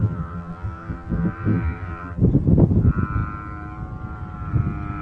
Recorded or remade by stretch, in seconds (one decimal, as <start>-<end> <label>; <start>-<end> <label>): 0.0-2.2 remade; 2.2-5.0 recorded